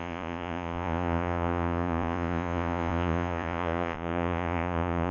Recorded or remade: remade